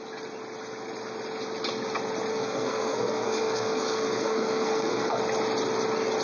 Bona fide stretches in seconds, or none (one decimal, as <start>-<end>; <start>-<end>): 0.0-2.3; 5.2-6.2